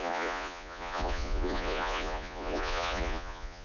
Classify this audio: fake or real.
fake